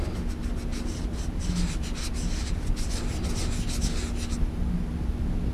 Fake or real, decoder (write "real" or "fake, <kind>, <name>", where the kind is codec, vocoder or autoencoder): real